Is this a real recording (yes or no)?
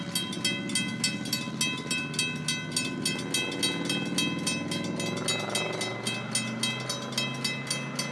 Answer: yes